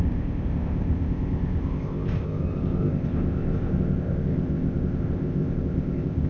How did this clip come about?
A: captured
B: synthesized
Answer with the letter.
B